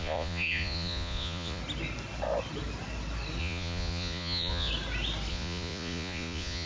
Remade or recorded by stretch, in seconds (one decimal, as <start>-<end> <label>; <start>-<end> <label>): 0.0-1.6 remade; 1.6-3.4 recorded; 3.4-4.7 remade; 4.7-5.3 recorded; 5.3-6.7 remade